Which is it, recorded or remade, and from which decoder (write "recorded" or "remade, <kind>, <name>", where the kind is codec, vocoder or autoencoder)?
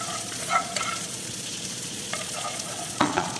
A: remade, vocoder, Vocos